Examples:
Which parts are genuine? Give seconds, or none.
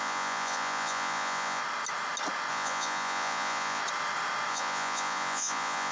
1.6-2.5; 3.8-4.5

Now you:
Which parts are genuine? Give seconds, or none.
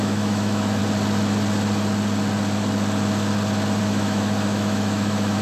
0.8-3.8